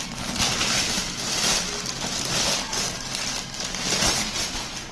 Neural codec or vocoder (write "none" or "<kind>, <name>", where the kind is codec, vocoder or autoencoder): none